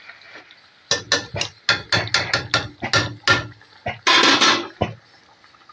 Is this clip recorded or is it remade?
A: recorded